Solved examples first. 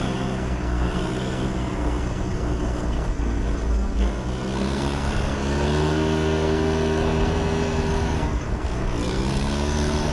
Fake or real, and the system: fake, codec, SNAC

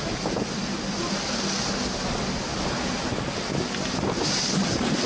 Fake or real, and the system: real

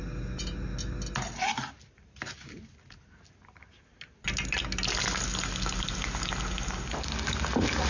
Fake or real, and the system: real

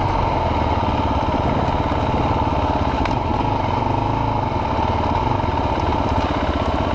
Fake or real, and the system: real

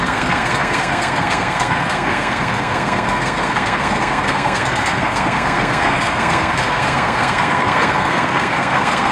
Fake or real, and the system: fake, codec, SNAC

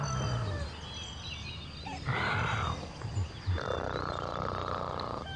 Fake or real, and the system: real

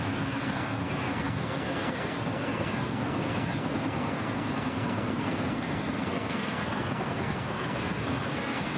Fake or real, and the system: fake, codec, SNAC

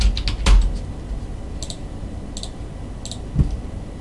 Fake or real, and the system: real